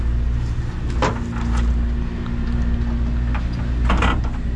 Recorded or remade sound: recorded